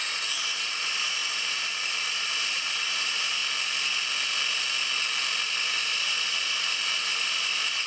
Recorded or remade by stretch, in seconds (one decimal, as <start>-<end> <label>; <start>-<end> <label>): 0.0-3.4 remade; 3.4-5.6 recorded; 5.6-7.9 remade